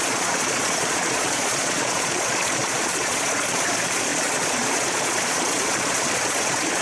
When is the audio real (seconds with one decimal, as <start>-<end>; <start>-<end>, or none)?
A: none